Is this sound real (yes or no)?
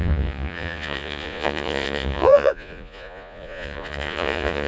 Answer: no